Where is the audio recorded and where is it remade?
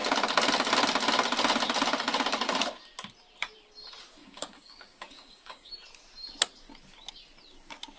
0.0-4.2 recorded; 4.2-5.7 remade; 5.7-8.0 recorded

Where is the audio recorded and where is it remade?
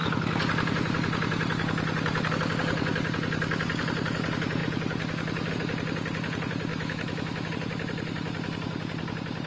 0.0-6.7 recorded; 6.7-7.5 remade; 7.5-9.5 recorded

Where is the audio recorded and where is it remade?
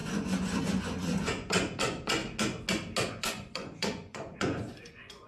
0.0-2.2 remade; 2.2-3.1 recorded; 3.1-5.3 remade